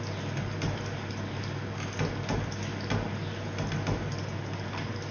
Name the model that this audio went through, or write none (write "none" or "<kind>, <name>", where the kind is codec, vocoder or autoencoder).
none